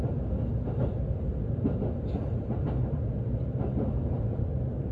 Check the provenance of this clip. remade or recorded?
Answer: recorded